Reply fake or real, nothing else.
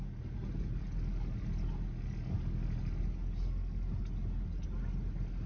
real